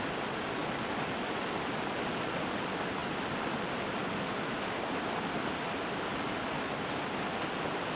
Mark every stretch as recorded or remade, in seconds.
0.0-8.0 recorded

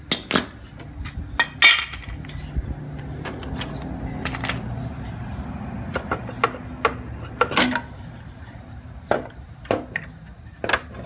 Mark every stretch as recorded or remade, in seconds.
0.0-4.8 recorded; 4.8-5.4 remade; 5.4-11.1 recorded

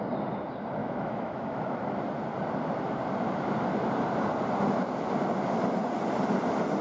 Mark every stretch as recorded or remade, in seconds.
0.0-0.8 recorded; 0.8-1.9 remade; 1.9-6.8 recorded

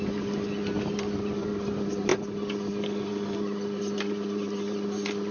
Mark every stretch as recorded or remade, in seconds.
0.0-5.3 recorded